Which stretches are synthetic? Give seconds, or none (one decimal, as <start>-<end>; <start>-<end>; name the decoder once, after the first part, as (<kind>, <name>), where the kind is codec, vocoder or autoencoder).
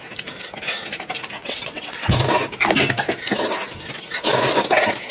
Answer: 1.4-2.1 (vocoder, WaveNeXt)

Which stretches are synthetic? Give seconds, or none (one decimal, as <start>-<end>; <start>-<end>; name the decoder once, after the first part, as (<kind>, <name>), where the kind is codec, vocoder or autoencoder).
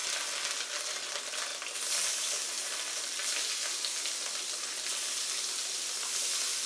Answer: none